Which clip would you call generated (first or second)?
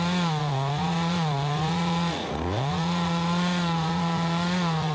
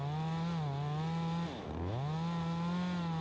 first